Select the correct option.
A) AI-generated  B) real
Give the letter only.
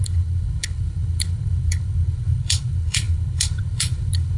A